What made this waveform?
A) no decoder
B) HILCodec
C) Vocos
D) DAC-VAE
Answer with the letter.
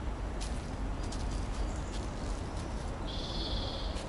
A